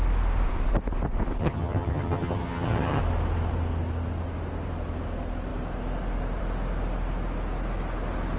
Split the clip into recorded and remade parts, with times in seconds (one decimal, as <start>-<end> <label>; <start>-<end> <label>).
0.0-1.4 recorded; 1.4-3.0 remade; 3.0-8.4 recorded